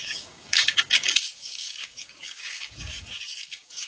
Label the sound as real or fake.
fake